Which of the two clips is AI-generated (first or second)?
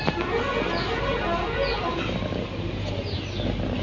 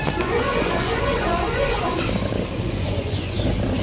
second